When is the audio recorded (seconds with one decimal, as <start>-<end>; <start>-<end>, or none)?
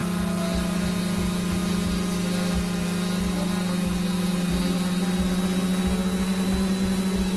0.0-7.4